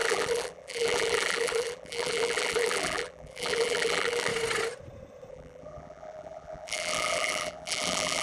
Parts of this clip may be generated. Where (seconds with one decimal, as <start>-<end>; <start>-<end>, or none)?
0.0-4.3; 5.3-8.2